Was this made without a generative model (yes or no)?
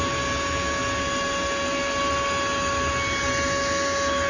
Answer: yes